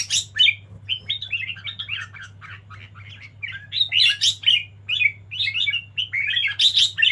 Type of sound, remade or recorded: recorded